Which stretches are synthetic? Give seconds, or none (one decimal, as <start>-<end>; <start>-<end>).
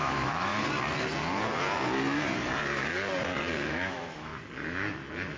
0.0-0.5; 3.7-4.3